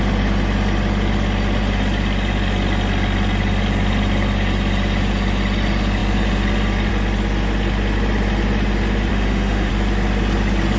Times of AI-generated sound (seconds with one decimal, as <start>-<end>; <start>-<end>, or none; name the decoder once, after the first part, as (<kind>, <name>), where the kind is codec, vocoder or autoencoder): 9.1-9.7 (autoencoder, DAC-VAE)